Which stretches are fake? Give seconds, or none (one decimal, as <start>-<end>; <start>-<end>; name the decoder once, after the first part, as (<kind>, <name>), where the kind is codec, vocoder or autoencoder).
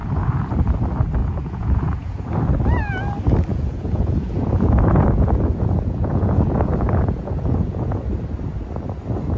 0.0-0.5 (vocoder, Vocos); 1.2-2.3; 3.5-8.0